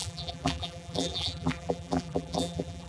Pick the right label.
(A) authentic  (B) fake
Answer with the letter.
B